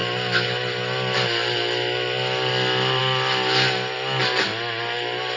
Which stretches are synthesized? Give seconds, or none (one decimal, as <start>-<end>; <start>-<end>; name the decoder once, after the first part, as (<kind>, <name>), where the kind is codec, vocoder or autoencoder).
none